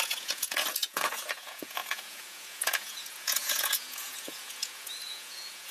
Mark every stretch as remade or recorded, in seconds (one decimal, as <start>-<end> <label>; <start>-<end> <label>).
0.0-5.7 remade